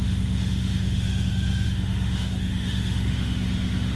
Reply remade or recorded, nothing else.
remade